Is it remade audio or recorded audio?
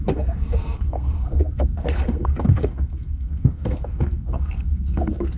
remade